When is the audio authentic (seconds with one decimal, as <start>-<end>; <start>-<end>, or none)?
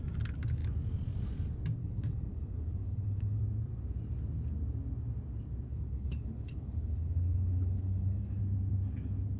0.0-1.8; 3.4-5.7; 8.4-9.4